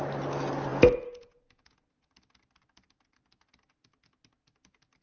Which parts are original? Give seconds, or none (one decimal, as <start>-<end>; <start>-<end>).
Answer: 0.0-0.7; 2.1-5.0